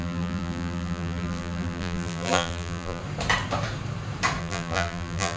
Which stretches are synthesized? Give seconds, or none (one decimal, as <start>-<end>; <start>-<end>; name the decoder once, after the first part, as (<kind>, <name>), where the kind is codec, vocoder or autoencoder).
0.0-3.0 (vocoder, BigVGAN v2); 4.4-5.4